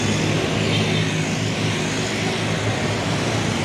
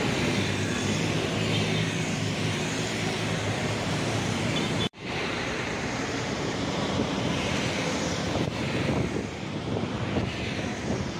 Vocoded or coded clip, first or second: second